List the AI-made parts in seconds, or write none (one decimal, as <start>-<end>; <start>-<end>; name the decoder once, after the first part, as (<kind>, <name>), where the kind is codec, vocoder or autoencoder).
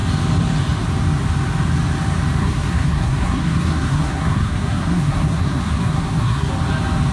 2.4-6.5 (codec, SNAC)